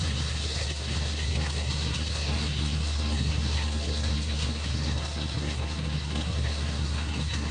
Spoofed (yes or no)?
yes